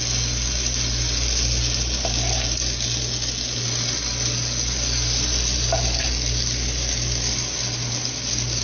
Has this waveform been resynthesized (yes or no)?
no